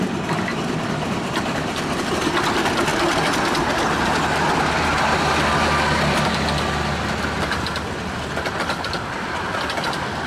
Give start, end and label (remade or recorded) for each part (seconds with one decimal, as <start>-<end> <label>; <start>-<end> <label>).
0.0-10.3 recorded